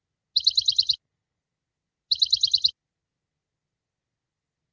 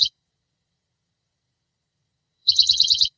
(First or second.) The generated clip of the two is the second